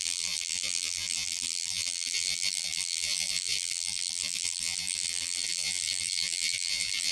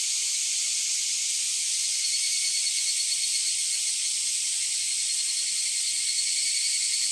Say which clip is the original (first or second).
second